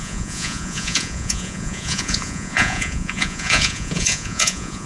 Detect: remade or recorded remade